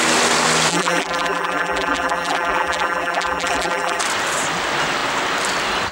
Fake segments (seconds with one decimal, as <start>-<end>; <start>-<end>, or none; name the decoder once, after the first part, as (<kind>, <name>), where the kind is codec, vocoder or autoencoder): 0.7-4.0 (vocoder, BigVGAN v2)